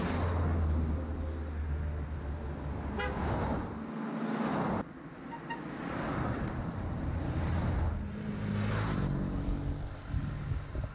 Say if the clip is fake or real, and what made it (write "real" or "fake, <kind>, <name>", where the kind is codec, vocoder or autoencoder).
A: real